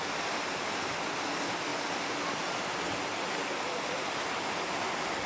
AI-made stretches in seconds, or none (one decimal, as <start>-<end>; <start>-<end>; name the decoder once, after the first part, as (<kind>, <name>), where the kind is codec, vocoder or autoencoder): none